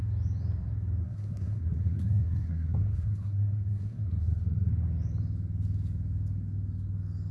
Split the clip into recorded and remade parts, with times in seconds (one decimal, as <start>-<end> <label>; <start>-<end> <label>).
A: 0.0-1.0 recorded; 1.0-4.7 remade; 4.7-7.3 recorded